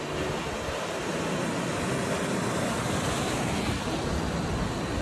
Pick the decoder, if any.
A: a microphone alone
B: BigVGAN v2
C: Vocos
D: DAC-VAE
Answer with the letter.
A